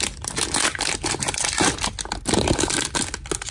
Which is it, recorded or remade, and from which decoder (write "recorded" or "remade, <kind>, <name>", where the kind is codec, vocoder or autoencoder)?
recorded